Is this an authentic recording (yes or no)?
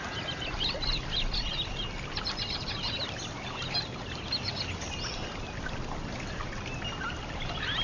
yes